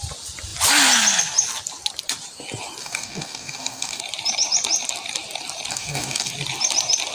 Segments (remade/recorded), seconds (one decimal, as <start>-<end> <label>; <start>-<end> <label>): 0.0-2.8 recorded; 2.8-4.0 remade; 4.0-5.7 recorded; 5.7-6.3 remade; 6.3-7.1 recorded